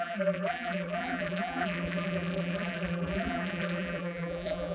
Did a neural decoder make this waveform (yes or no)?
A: yes